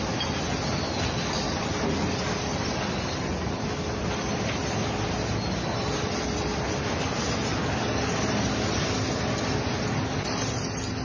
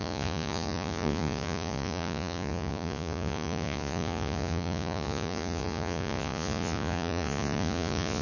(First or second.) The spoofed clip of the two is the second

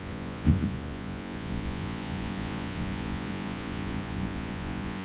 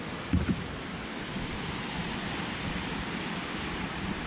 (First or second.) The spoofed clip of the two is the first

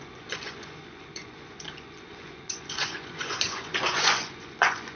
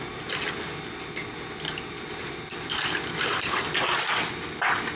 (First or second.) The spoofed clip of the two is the first